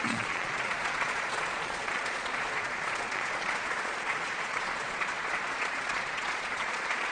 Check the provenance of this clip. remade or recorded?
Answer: remade